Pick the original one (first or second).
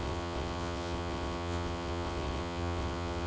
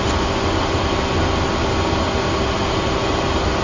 second